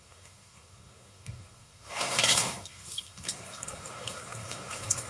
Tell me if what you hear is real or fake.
fake